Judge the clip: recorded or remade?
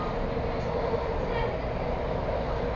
recorded